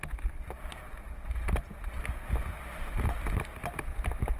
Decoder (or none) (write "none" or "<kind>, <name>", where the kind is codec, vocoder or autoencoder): none